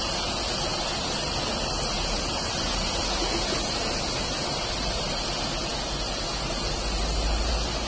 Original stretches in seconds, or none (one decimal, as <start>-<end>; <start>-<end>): 0.0-7.9